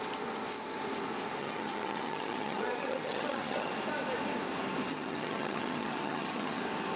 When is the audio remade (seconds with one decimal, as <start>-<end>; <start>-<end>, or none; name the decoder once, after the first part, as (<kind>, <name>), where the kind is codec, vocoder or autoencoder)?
1.4-3.7 (vocoder, HiFi-GAN); 4.9-6.6